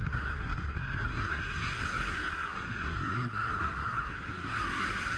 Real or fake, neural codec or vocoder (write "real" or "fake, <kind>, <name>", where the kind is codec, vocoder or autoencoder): fake, codec, SNAC